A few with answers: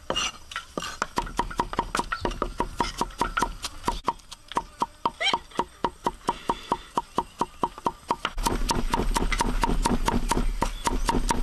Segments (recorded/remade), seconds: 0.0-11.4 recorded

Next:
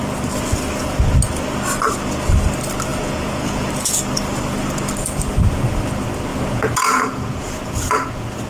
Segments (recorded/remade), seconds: 0.0-2.9 recorded; 2.9-3.7 remade; 3.7-6.3 recorded; 6.3-8.5 remade

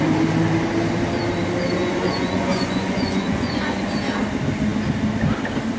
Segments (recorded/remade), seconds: 0.0-1.8 recorded; 1.8-3.9 remade; 3.9-5.8 recorded